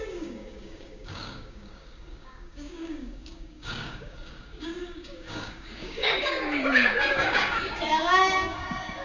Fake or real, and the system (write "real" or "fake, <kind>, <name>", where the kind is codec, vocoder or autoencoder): fake, codec, DAC